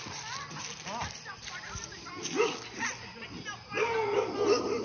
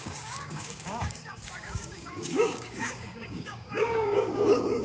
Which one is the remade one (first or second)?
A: second